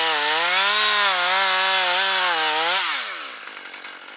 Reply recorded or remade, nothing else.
recorded